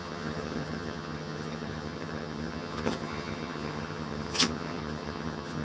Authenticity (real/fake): fake